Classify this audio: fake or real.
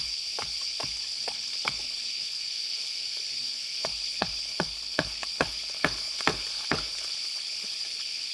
fake